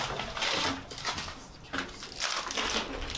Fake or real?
real